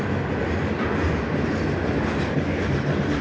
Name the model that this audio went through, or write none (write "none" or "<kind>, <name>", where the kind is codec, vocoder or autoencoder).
none